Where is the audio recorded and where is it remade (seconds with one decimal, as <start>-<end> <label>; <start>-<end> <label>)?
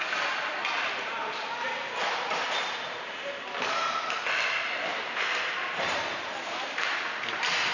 0.0-1.2 recorded; 1.2-1.7 remade; 1.7-4.9 recorded; 4.9-7.0 remade; 7.0-7.7 recorded